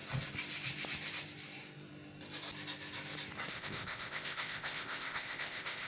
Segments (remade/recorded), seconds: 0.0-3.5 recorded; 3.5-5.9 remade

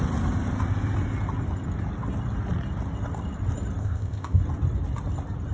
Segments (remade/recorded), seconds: 0.0-3.8 recorded; 3.8-4.4 remade; 4.4-5.5 recorded

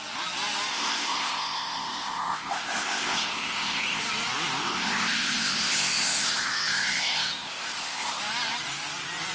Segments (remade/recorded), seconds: 0.0-0.7 recorded; 0.7-4.0 remade; 4.0-4.6 recorded; 4.6-8.2 remade; 8.2-9.3 recorded

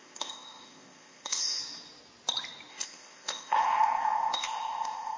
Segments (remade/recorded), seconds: 0.0-1.6 remade; 1.6-2.7 recorded; 2.7-5.2 remade

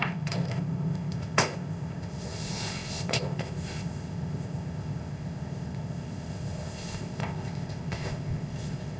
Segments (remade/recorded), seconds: 0.0-9.0 remade